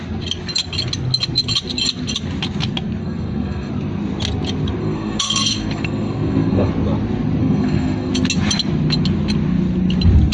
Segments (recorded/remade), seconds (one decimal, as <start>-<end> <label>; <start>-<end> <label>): 0.0-3.0 recorded; 3.0-3.7 remade; 3.7-4.8 recorded; 4.8-6.7 remade; 6.7-7.4 recorded; 7.4-8.1 remade; 8.1-10.3 recorded

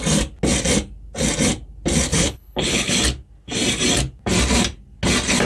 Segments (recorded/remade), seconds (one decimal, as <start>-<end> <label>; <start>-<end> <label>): 0.0-2.1 recorded; 2.1-2.9 remade; 2.9-5.5 recorded

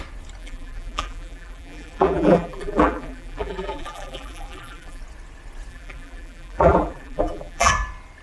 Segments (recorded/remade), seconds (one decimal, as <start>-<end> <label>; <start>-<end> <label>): 0.0-0.4 recorded; 0.4-5.0 remade; 5.0-5.7 recorded; 5.7-7.7 remade; 7.7-8.2 recorded

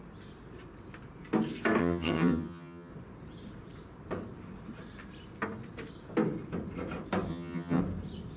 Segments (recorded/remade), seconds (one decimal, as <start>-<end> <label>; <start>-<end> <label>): 0.0-1.8 recorded; 1.8-2.9 remade; 2.9-7.3 recorded; 7.3-7.8 remade; 7.8-8.4 recorded

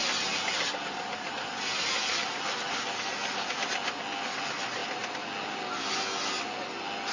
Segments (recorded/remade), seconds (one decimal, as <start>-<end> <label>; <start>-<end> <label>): 0.0-2.3 remade; 2.3-7.1 recorded

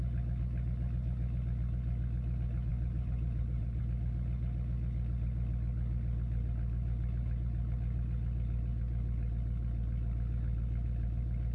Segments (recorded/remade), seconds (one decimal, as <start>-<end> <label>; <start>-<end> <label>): 0.0-2.7 recorded; 2.7-3.8 remade; 3.8-11.5 recorded

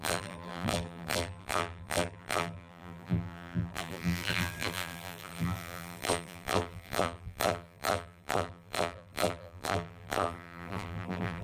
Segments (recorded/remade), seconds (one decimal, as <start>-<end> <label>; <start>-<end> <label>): 0.0-11.4 remade

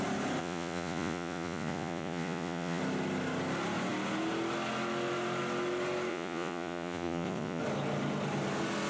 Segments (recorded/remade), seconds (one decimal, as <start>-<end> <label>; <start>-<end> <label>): 0.0-0.4 recorded; 0.4-2.8 remade; 2.8-6.1 recorded; 6.1-7.6 remade; 7.6-8.9 recorded